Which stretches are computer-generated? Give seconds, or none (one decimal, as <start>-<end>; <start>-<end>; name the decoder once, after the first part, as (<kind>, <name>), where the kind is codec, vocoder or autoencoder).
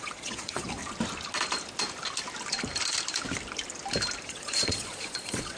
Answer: 0.0-0.8 (vocoder, Vocos); 4.2-5.6